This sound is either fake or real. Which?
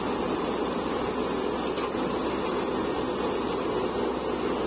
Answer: real